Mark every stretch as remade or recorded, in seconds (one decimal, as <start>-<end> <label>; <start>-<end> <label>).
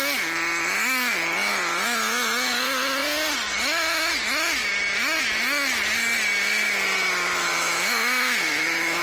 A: 0.0-7.5 recorded; 7.5-9.0 remade